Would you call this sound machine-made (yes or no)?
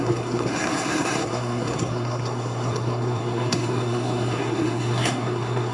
yes